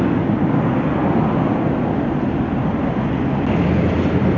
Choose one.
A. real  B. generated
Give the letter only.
A